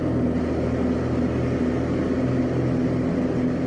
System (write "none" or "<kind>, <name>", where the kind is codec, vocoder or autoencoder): none